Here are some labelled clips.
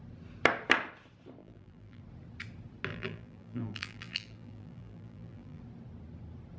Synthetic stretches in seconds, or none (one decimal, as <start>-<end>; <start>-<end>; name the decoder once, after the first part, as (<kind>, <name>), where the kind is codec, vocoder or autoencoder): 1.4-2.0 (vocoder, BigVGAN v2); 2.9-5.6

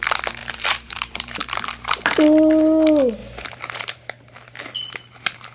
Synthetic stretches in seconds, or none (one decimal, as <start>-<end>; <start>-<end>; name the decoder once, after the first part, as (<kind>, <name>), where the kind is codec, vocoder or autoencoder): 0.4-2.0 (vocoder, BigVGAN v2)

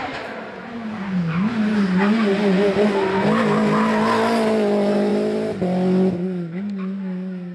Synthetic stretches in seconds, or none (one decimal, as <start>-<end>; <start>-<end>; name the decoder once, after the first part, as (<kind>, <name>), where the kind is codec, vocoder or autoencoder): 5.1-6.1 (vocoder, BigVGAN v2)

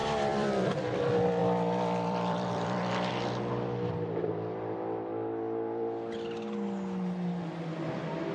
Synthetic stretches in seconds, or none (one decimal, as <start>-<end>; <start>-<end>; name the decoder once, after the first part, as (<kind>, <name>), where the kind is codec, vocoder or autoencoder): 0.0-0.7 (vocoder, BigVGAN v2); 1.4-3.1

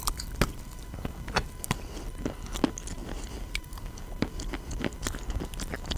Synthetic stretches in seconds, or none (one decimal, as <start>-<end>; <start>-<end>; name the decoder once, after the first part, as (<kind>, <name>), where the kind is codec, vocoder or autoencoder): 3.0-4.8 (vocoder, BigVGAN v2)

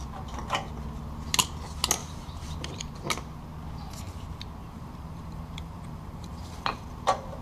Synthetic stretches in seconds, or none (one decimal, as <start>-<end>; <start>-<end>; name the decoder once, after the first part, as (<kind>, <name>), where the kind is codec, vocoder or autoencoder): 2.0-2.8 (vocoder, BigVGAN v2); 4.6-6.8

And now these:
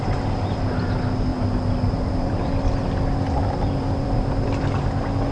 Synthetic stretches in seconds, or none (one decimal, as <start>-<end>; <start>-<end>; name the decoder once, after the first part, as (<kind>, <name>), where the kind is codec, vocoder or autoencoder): 1.3-2.6 (vocoder, BigVGAN v2); 3.4-4.8